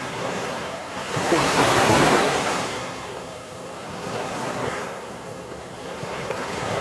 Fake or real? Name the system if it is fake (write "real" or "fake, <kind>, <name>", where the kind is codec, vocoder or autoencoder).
fake, codec, SNAC